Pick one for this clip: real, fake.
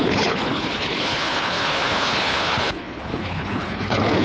fake